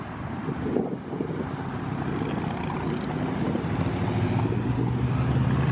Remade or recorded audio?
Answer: recorded